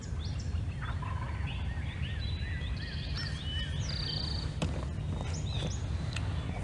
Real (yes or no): yes